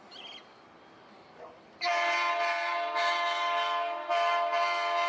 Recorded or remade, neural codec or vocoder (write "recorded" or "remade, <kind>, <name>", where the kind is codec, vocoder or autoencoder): recorded